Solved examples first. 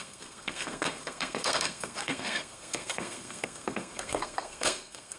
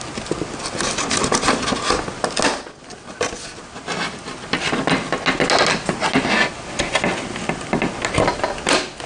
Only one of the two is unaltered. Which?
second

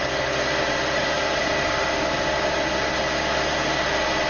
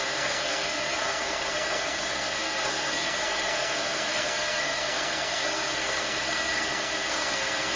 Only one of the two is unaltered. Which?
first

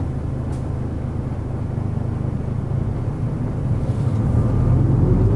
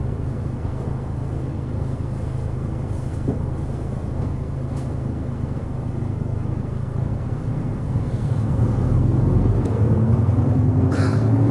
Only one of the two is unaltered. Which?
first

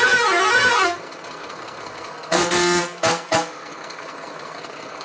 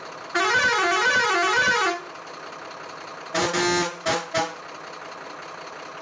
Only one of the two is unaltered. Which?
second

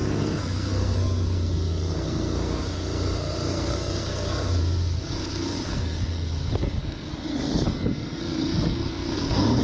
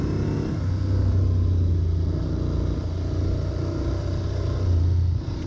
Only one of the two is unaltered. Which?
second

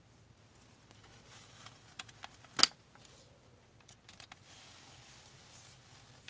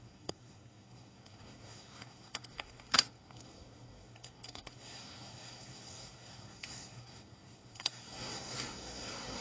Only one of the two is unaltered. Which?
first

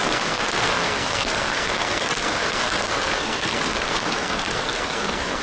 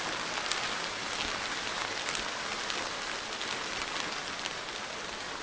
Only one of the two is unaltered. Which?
second